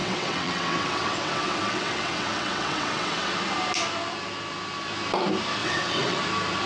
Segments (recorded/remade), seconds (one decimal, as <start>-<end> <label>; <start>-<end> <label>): 0.0-3.3 remade; 3.3-5.6 recorded; 5.6-6.2 remade; 6.2-6.7 recorded